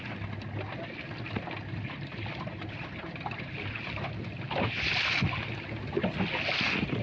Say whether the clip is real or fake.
real